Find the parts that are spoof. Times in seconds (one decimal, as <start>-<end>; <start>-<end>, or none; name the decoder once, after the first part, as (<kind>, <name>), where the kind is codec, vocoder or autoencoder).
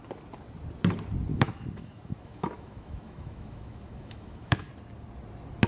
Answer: 1.3-4.7 (autoencoder, DAC-VAE)